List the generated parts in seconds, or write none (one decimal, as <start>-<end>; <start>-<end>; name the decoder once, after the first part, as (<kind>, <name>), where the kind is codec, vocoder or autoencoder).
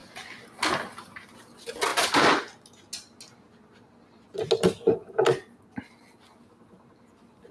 none